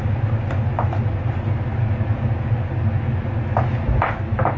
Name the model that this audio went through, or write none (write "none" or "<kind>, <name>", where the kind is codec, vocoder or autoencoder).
none